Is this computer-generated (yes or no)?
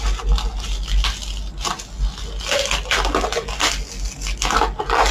no